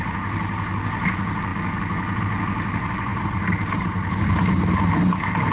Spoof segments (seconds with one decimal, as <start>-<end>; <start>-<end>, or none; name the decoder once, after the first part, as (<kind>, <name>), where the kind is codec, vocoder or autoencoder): none